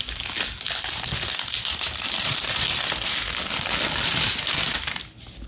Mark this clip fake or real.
real